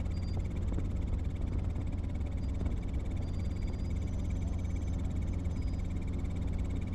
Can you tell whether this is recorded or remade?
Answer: recorded